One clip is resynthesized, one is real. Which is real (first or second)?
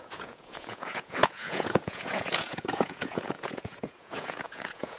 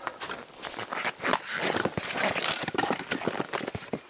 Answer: second